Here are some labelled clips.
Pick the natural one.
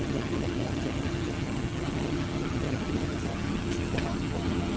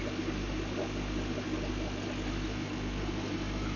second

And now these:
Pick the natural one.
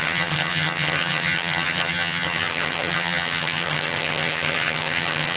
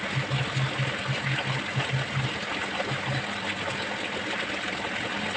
second